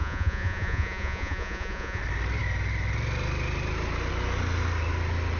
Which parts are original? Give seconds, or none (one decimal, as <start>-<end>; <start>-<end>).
2.0-5.4